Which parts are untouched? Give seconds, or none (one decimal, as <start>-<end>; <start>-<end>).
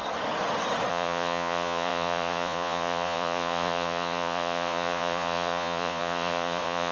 0.0-0.9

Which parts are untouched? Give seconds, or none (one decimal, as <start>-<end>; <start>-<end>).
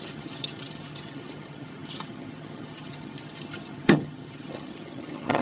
none